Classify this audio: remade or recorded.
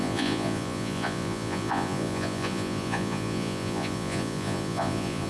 remade